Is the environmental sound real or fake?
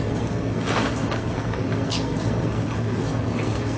fake